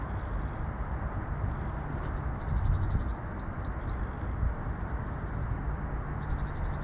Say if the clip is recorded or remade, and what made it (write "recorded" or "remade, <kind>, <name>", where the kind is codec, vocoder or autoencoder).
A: recorded